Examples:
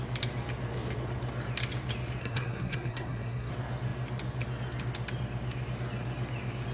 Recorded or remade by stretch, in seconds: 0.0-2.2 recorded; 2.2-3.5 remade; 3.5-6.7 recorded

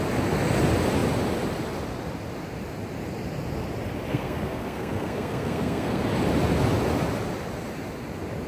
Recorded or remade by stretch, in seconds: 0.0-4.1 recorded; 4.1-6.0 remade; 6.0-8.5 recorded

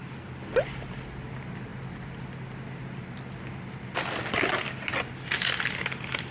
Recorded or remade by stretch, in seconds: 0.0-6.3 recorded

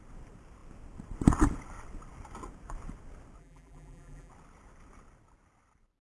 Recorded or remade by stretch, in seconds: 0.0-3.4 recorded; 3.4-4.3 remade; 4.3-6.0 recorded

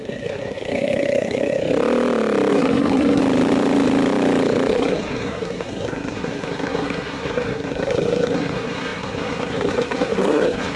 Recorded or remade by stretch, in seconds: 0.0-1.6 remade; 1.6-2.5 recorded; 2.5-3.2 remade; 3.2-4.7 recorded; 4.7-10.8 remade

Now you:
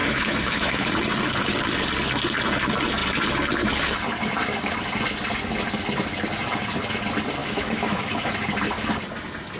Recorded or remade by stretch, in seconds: 0.0-0.9 remade; 0.9-7.4 recorded; 7.4-8.3 remade; 8.3-9.6 recorded

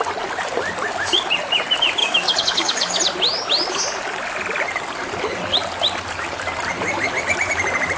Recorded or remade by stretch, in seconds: 0.0-2.0 recorded; 2.0-3.0 remade; 3.0-8.0 recorded